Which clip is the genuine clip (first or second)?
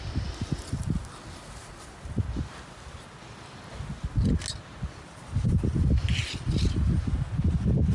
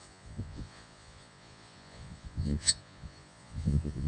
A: first